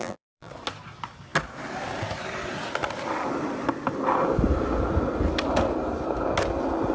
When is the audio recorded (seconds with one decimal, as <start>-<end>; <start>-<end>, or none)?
0.5-6.9